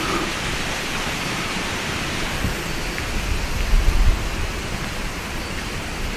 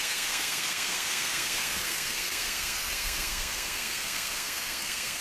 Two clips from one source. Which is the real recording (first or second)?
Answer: first